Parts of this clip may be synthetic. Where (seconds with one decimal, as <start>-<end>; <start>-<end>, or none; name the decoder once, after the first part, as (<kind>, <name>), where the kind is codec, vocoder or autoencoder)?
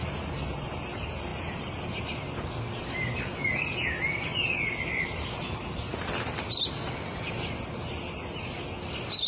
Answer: none